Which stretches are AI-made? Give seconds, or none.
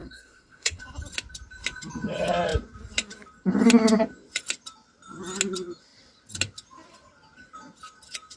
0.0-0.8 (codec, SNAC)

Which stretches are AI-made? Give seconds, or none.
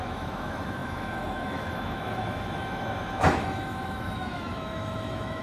0.0-5.4 (autoencoder, DAC-VAE)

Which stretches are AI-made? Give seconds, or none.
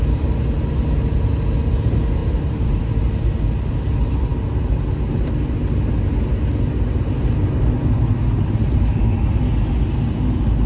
2.2-2.8 (vocoder, BigVGAN v2)